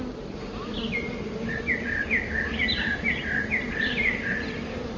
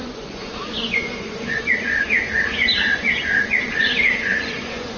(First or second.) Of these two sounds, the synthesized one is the second